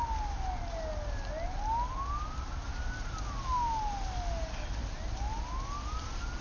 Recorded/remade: recorded